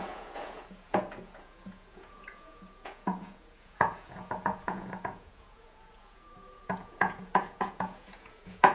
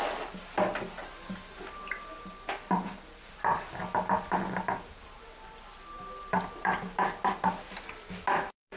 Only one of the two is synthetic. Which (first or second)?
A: first